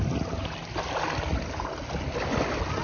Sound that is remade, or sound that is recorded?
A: recorded